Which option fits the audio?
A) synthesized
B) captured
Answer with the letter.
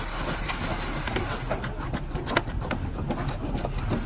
B